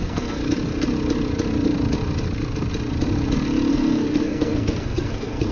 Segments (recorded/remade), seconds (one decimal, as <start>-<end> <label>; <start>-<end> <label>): 0.0-0.4 remade; 0.4-3.7 recorded; 3.7-5.5 remade